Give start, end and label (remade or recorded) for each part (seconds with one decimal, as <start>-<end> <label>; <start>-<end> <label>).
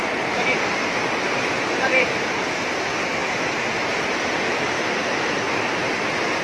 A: 0.0-6.4 recorded